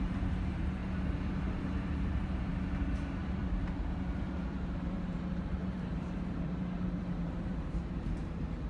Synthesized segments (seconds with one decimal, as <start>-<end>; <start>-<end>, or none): 0.0-0.8; 1.6-8.7